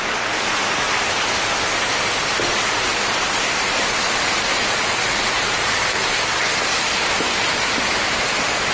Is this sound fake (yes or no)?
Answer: no